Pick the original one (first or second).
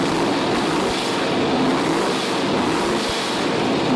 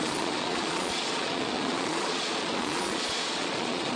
first